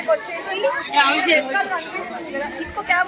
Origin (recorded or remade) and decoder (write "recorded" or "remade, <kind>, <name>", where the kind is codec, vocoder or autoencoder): recorded